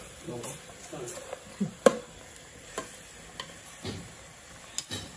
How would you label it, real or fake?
real